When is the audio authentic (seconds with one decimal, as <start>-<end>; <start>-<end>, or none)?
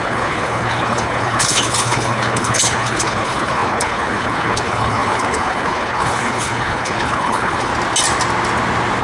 7.7-9.0